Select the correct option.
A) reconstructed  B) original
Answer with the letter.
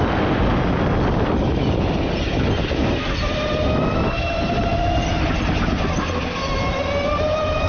B